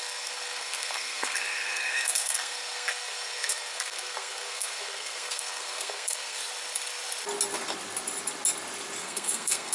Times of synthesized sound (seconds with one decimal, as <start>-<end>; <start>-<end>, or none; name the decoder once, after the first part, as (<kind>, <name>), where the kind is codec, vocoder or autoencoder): 0.0-6.4 (codec, SNAC); 9.0-9.7

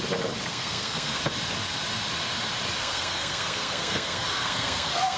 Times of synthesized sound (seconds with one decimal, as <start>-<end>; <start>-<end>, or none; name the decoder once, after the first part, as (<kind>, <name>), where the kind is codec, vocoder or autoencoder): 0.5-1.2 (codec, SNAC); 2.8-5.2

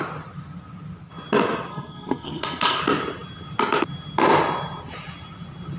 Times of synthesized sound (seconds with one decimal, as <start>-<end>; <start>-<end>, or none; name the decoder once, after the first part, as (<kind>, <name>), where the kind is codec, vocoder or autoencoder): 1.7-2.8 (codec, SNAC)

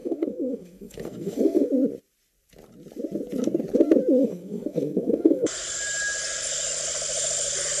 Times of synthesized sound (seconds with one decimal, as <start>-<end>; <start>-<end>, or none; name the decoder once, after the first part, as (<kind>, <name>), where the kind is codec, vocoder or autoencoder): 0.0-1.7 (codec, SNAC); 4.2-5.5

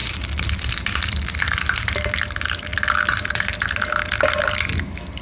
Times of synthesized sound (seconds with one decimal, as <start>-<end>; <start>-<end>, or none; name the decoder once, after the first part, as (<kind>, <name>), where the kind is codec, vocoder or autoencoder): none

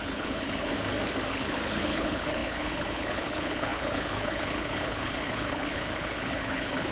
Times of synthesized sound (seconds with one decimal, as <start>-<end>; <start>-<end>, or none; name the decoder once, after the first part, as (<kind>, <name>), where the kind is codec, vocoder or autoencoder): 0.0-0.7 (codec, HILCodec); 1.3-6.9

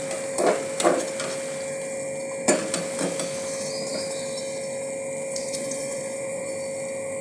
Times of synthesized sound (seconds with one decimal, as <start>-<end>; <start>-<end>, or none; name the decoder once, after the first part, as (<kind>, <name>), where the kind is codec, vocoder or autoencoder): 5.4-6.5 (vocoder, Vocos)